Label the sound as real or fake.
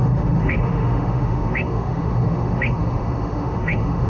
fake